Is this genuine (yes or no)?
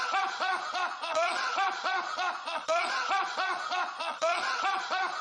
no